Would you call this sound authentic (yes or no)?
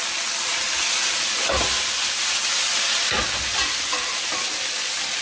yes